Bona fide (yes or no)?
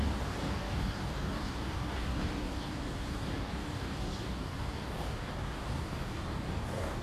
no